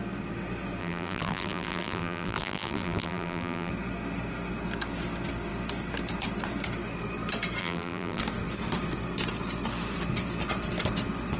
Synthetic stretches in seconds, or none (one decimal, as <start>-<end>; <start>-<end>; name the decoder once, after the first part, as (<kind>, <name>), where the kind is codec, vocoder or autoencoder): 0.8-3.7 (vocoder, BigVGAN v2); 7.6-8.2